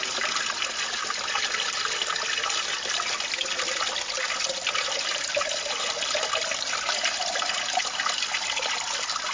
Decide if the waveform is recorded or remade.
recorded